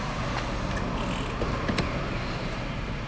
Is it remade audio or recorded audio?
recorded